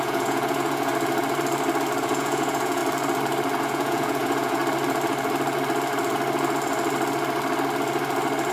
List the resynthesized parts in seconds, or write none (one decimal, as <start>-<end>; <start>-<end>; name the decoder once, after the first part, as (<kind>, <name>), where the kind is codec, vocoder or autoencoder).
0.0-0.9 (vocoder, Vocos); 2.0-2.8; 3.6-4.6